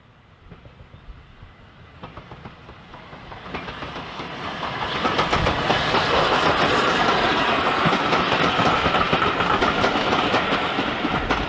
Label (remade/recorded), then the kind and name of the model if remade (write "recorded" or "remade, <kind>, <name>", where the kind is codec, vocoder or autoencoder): recorded